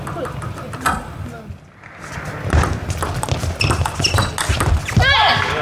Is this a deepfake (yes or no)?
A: no